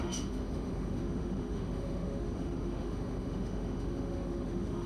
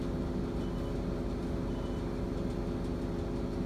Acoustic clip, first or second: second